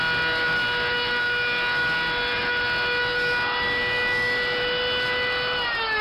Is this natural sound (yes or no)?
yes